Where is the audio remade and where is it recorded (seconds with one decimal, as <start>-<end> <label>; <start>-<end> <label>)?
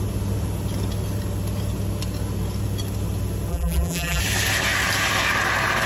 0.0-3.5 recorded; 3.5-4.2 remade; 4.2-5.9 recorded